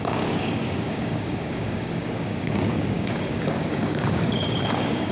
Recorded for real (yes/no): no